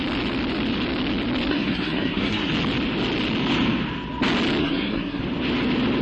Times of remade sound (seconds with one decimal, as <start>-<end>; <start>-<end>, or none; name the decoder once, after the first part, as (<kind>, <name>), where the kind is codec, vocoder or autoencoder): 1.5-2.5 (codec, SNAC); 4.6-5.2

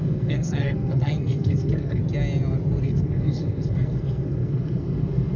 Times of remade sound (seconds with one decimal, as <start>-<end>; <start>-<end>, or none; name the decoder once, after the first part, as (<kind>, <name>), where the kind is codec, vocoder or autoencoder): 0.0-2.0 (codec, SNAC); 2.8-5.4